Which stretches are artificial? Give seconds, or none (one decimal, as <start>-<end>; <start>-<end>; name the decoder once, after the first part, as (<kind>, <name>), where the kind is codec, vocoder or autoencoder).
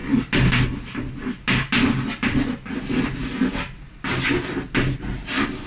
none